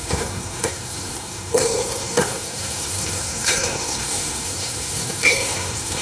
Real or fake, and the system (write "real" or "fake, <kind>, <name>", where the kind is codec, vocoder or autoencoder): fake, codec, SNAC